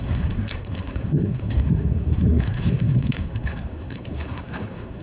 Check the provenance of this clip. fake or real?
fake